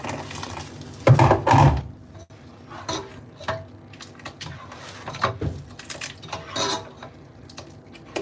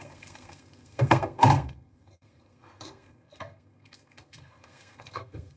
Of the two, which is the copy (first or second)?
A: second